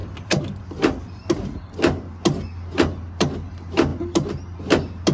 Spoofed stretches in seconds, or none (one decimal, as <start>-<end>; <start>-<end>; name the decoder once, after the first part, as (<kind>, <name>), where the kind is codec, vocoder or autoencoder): none